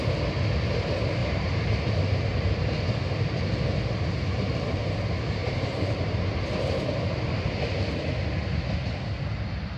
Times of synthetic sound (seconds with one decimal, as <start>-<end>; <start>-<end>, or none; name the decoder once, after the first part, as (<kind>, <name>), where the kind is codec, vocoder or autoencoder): 1.2-1.7 (vocoder, BigVGAN v2); 5.4-6.3